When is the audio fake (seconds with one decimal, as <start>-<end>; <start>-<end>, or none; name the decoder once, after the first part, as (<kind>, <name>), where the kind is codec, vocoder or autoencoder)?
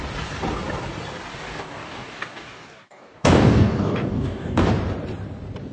1.3-4.7 (codec, DAC)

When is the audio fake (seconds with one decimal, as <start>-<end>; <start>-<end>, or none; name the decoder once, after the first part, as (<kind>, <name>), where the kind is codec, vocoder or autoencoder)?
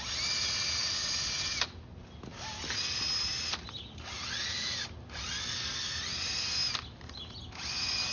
none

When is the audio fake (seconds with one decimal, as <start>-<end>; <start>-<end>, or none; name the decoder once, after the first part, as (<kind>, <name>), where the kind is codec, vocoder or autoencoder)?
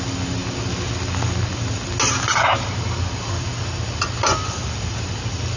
none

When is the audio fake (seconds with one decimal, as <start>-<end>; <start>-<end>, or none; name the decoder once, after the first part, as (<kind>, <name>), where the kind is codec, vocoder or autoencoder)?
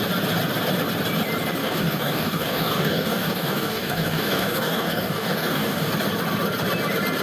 1.6-5.9 (codec, DAC)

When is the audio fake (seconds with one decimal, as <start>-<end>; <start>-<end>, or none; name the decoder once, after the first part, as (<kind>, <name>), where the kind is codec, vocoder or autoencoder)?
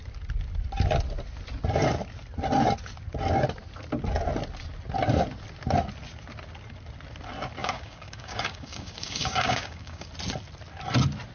7.6-10.1 (codec, DAC)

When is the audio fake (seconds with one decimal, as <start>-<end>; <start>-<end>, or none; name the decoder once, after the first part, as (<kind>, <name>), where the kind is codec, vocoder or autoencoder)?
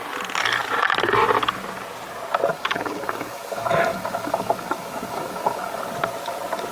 2.5-5.8 (codec, DAC)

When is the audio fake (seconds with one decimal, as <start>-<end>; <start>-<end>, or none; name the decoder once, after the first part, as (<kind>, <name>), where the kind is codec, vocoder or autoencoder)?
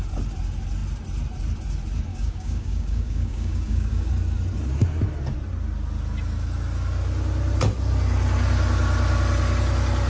2.1-4.1 (codec, DAC)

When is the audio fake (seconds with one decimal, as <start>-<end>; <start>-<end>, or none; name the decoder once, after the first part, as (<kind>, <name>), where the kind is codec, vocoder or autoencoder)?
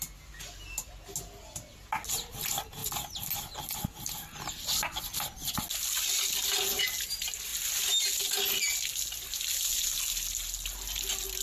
none